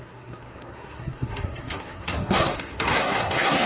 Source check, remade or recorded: remade